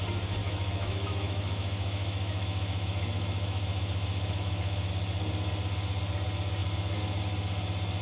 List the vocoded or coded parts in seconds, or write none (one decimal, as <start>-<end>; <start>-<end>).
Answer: 0.4-4.9